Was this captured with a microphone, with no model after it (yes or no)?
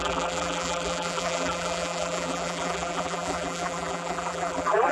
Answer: no